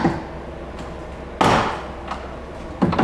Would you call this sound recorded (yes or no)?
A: yes